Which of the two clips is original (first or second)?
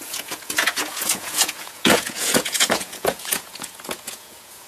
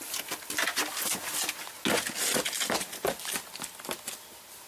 second